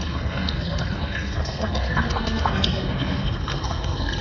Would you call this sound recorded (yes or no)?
no